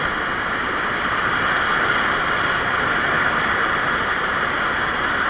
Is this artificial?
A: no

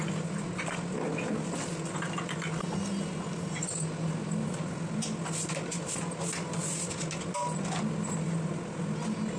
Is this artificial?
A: no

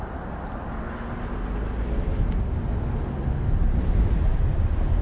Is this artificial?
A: no